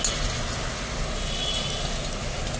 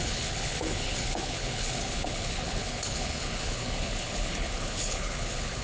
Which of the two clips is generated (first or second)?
second